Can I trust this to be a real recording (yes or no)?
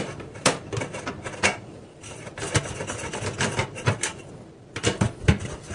no